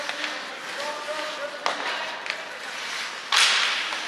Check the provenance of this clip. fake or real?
real